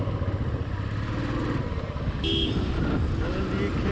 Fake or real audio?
real